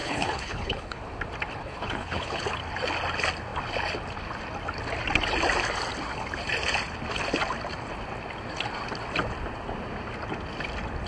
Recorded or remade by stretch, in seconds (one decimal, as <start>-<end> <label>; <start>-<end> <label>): 0.0-1.0 remade; 1.0-1.6 recorded; 1.6-2.4 remade; 2.4-11.1 recorded